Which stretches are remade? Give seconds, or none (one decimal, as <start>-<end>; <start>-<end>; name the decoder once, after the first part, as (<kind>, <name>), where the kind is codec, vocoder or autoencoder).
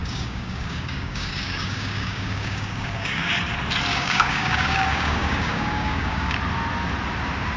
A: 0.0-3.3 (codec, DAC); 3.9-6.4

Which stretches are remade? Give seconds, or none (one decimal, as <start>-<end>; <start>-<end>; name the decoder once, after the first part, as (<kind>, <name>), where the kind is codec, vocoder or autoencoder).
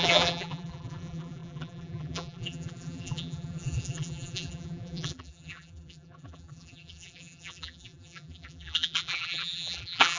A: 0.0-10.2 (vocoder, BigVGAN v2)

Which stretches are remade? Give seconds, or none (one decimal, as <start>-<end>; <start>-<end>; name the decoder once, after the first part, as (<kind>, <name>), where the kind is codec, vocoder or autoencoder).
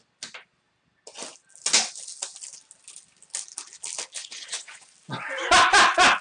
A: 4.2-4.9 (vocoder, Vocos)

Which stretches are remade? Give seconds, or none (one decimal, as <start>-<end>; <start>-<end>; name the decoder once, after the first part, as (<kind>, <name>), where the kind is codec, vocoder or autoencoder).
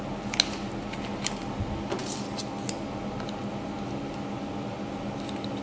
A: none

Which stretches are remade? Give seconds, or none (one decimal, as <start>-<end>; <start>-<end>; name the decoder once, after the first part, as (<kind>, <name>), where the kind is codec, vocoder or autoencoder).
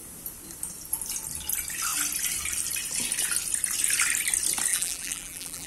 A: 4.7-5.7 (vocoder, BigVGAN v2)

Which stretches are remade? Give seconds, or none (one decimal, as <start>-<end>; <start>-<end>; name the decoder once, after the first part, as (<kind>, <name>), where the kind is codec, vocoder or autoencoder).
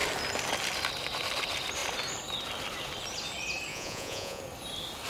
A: 3.7-4.4 (vocoder, Vocos)